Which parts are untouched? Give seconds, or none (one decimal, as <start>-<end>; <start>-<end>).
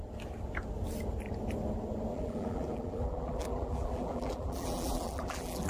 0.0-2.1